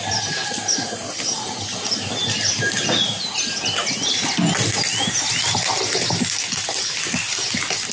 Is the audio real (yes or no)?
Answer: yes